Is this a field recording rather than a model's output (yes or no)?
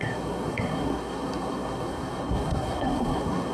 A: no